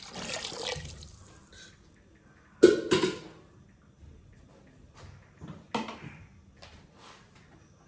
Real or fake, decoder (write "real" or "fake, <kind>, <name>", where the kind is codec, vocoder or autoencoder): real